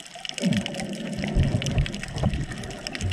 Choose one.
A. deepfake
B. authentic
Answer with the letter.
B